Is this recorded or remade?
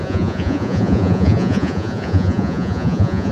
remade